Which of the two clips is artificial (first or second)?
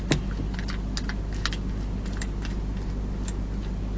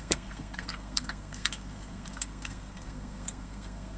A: second